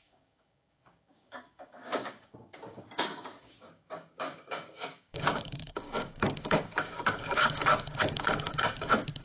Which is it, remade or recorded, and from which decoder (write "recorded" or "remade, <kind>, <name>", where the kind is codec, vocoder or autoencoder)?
remade, codec, DAC